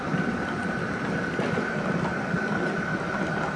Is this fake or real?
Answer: fake